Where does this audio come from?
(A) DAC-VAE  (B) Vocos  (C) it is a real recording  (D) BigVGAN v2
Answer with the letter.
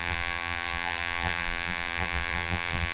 D